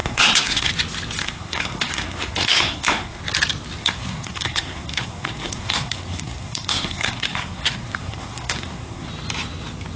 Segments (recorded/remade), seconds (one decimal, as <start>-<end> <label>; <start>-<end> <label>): 0.0-0.7 remade; 0.7-1.2 recorded; 1.2-3.2 remade; 3.2-3.8 recorded; 3.8-9.1 remade; 9.1-10.0 recorded